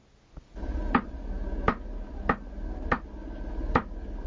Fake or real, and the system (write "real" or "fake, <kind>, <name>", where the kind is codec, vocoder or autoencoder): real